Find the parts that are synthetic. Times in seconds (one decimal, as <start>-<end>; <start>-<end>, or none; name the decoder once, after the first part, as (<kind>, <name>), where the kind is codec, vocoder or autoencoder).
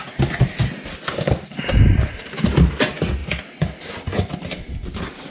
none